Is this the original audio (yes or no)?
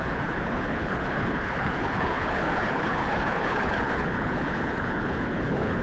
no